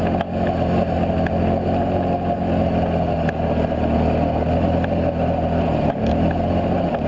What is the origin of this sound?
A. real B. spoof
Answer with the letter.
A